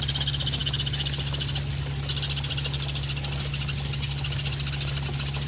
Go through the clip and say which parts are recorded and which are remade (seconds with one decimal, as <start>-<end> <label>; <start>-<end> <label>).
0.0-5.5 recorded